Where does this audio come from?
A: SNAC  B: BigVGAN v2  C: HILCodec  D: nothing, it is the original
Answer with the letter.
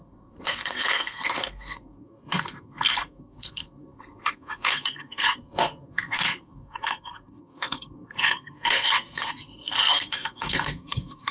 A